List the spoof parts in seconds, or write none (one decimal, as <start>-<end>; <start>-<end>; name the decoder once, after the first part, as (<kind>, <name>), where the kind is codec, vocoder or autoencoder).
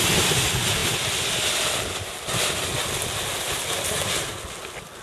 none